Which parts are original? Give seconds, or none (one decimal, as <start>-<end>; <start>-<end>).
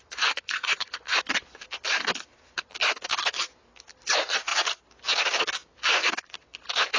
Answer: 1.2-7.0